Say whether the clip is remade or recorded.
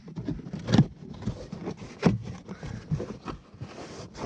recorded